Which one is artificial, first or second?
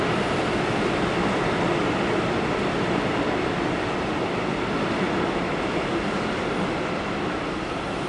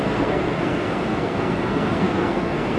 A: second